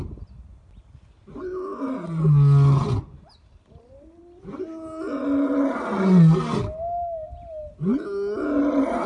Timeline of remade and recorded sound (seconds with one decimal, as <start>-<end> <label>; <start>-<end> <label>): 0.0-9.1 recorded